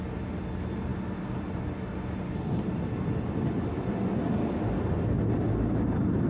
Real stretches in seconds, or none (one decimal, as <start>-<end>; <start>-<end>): 0.0-6.3